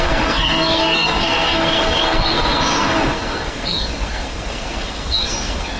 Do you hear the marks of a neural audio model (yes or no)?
yes